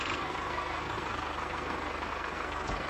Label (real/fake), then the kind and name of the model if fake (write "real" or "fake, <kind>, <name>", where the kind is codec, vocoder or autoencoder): fake, codec, SNAC